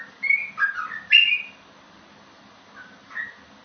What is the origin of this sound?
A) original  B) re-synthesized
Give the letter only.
A